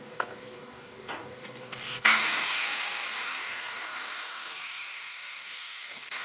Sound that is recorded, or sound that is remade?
remade